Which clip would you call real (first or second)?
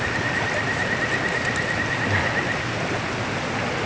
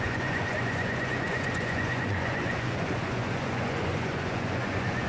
first